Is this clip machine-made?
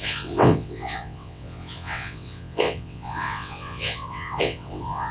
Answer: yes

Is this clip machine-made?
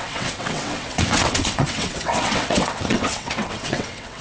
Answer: yes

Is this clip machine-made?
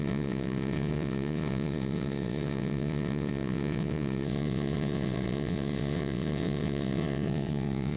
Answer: yes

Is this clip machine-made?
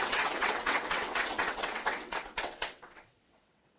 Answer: yes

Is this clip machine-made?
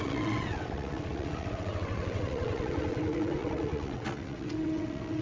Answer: yes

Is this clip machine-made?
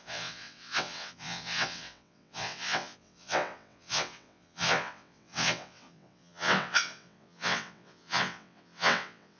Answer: yes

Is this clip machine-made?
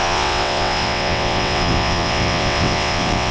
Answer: yes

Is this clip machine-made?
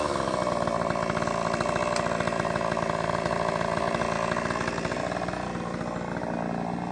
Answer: no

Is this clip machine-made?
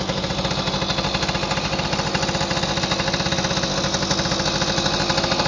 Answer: no